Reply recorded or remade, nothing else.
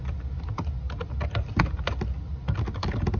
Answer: recorded